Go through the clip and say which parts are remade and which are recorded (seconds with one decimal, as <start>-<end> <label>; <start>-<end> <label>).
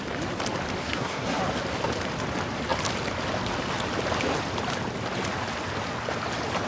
0.0-0.8 recorded; 0.8-1.4 remade; 1.4-6.7 recorded